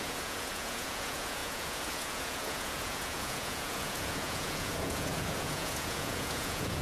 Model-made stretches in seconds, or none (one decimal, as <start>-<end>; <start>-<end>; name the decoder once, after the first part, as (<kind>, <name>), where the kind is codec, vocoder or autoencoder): 0.0-6.8 (vocoder, Vocos)